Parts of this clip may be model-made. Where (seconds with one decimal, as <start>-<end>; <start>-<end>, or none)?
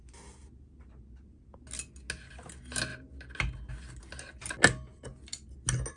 none